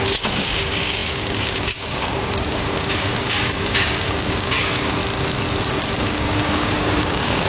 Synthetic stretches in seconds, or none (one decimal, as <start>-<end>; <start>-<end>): 0.0-5.0; 5.6-7.5

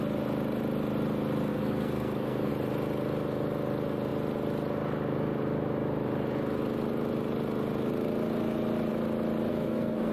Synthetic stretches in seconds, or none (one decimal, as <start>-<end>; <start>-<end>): 1.5-2.5; 9.5-10.1

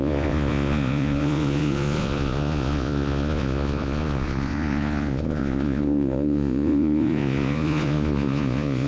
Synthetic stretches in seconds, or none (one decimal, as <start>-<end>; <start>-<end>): 0.0-8.9

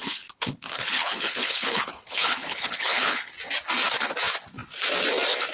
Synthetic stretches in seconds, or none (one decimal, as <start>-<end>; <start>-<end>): 0.0-3.3

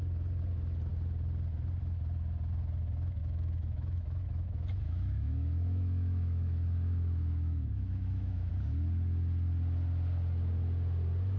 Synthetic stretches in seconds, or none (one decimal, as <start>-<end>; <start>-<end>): 3.2-8.5

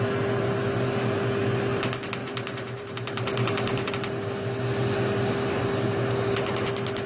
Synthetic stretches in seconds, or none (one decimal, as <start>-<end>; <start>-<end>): 2.2-3.9